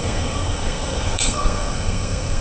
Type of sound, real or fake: fake